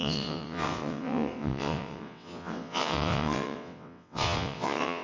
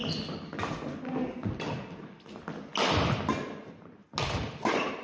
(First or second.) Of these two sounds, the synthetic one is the first